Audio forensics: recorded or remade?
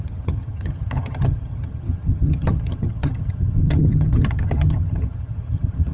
remade